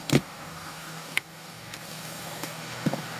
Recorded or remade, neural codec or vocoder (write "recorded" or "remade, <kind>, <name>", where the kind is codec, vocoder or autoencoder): remade, codec, DAC